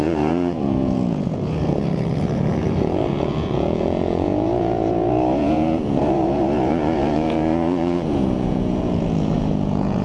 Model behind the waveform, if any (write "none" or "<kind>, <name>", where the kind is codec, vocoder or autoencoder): vocoder, Vocos